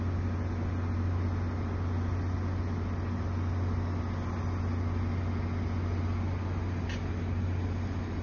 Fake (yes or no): no